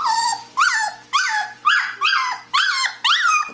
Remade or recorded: recorded